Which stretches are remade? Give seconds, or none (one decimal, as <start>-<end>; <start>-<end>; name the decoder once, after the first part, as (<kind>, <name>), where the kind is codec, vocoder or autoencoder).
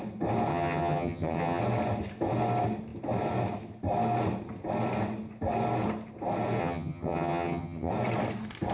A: 0.5-1.6 (vocoder, HiFi-GAN); 6.6-7.9